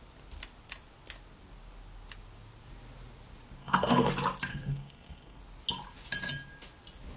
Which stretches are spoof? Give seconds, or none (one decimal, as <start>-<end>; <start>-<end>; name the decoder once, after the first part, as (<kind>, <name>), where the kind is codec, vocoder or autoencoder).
3.6-4.1 (codec, SNAC); 4.5-5.4